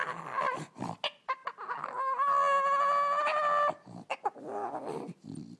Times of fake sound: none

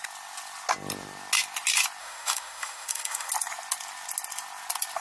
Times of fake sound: 2.0-3.3 (autoencoder, DAC-VAE)

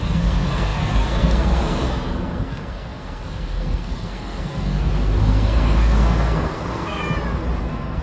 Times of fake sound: 0.0-7.0 (codec, SNAC); 7.6-8.0